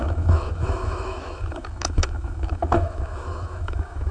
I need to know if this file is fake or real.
fake